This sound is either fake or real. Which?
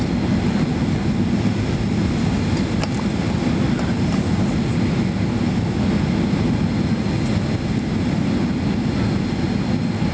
real